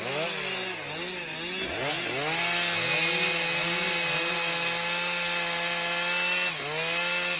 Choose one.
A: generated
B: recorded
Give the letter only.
B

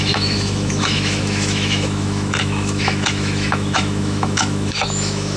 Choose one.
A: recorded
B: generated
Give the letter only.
B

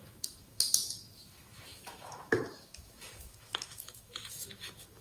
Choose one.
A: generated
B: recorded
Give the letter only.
A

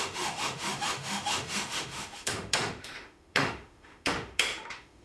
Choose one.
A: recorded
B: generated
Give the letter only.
B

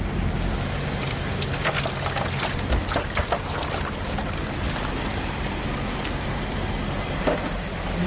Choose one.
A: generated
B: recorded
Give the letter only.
B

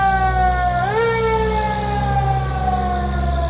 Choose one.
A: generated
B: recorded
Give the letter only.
B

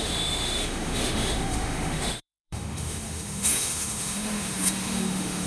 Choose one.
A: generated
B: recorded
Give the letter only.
A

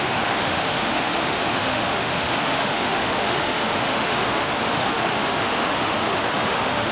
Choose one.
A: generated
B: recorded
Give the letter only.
A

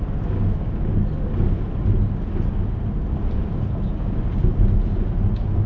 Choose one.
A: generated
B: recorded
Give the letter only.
B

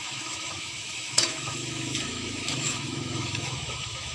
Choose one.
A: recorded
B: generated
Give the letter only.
B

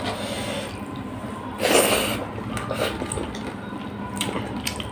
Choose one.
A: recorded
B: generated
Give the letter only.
A